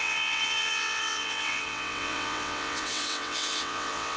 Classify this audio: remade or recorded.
remade